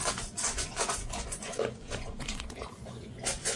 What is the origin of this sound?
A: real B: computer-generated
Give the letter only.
B